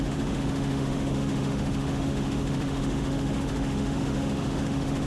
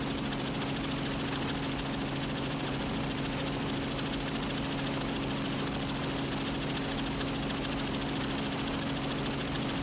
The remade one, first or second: first